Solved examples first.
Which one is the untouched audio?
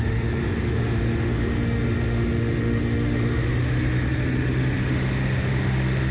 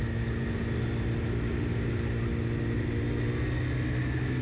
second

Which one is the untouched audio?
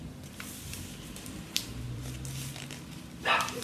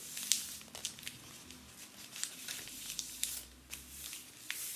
second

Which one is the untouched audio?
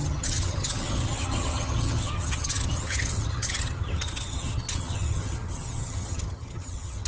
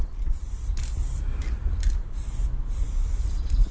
second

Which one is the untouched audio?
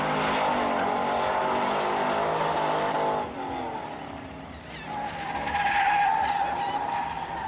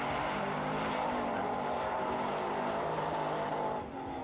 first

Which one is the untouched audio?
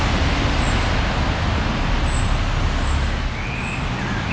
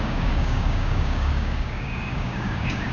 first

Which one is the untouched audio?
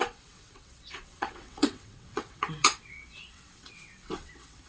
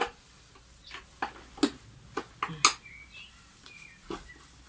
second